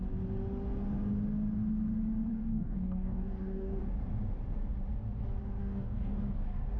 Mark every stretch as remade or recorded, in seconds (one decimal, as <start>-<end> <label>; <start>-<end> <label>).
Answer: 0.0-2.3 recorded; 2.3-3.8 remade; 3.8-5.6 recorded; 5.6-6.2 remade; 6.2-6.8 recorded